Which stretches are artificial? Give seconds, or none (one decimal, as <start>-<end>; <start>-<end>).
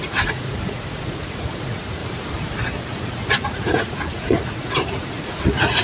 0.0-2.0; 3.3-5.8